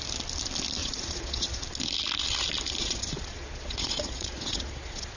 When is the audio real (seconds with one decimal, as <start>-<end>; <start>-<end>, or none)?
0.0-0.8; 1.6-2.8